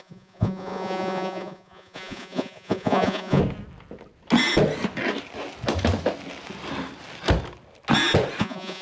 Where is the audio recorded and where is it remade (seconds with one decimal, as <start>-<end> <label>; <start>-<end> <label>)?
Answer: 0.0-3.4 remade; 3.4-8.4 recorded; 8.4-8.8 remade